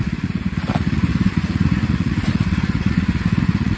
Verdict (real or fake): fake